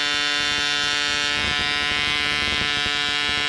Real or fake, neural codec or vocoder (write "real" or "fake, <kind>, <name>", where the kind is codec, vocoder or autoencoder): real